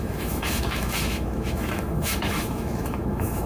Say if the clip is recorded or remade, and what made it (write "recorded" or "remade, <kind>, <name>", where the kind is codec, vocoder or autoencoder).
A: remade, autoencoder, DAC-VAE